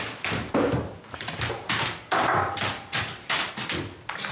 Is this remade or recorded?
recorded